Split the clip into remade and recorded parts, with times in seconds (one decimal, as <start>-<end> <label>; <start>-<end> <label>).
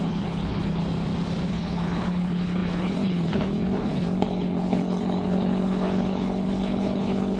0.0-0.8 remade; 0.8-1.5 recorded; 1.5-7.4 remade